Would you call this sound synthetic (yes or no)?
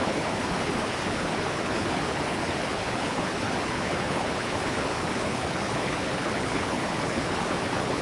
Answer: yes